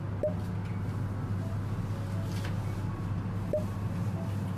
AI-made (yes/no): no